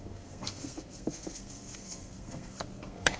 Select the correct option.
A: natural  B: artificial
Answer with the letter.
B